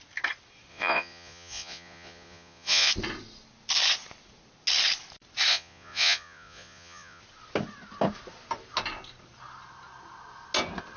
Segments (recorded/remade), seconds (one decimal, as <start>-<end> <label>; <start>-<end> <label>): 0.0-0.7 recorded; 0.7-2.9 remade; 2.9-5.5 recorded; 5.5-7.2 remade; 7.2-11.0 recorded